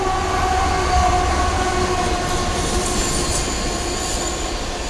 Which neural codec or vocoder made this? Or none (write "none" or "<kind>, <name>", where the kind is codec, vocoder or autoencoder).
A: none